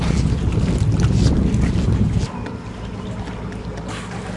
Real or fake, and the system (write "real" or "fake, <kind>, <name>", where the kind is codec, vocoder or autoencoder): real